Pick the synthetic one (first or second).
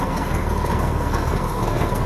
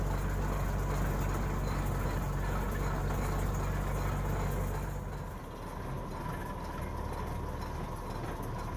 first